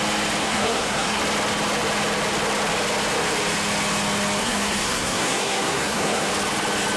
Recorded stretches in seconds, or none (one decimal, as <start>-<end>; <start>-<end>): 0.0-0.4; 1.2-4.4; 6.3-7.0